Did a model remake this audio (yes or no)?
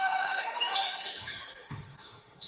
yes